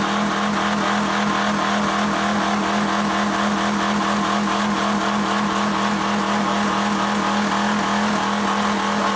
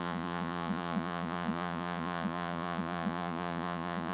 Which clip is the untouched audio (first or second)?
first